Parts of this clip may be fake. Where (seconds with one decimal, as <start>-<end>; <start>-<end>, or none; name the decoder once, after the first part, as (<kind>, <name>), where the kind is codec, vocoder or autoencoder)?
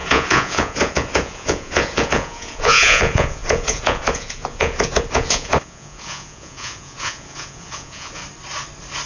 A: 0.0-8.2 (vocoder, Vocos)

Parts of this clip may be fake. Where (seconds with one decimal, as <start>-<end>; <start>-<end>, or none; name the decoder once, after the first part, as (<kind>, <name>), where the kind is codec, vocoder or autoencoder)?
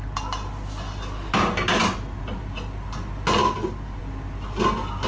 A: none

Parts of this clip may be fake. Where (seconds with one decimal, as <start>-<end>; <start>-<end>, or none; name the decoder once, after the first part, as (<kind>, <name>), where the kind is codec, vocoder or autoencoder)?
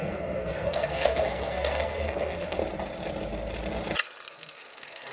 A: 0.0-2.6 (codec, SNAC); 4.3-5.1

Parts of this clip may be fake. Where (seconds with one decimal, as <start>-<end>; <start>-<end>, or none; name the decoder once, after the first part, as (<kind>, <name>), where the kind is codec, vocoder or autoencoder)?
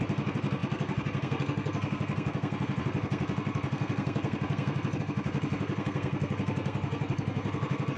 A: 0.0-8.0 (codec, SNAC)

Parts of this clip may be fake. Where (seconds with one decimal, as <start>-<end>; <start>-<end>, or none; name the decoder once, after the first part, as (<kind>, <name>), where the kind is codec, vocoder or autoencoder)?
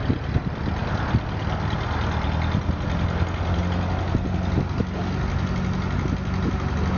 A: none